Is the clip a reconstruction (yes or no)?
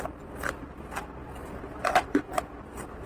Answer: no